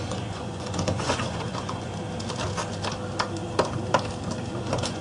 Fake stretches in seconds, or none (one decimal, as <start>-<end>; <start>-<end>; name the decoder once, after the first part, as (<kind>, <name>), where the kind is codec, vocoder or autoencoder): 0.0-1.9 (vocoder, Vocos); 4.6-5.0